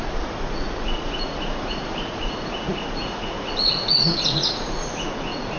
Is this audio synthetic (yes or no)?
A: yes